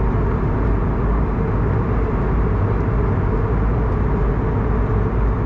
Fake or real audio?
real